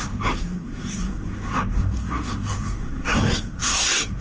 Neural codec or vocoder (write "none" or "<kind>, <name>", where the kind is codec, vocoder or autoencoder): codec, SNAC